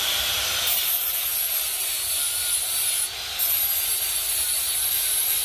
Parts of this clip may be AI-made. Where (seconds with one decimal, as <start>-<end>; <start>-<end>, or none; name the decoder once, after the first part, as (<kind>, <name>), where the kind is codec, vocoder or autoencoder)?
0.0-1.3 (vocoder, BigVGAN v2); 4.3-5.4